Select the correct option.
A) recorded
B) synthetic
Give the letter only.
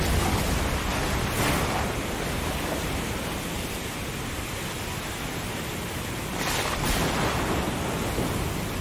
A